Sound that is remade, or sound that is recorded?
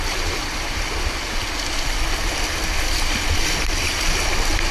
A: recorded